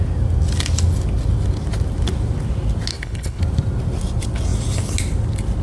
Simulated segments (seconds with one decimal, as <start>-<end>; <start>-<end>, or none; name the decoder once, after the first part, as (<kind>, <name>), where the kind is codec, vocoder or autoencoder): 2.9-3.4 (codec, HILCodec)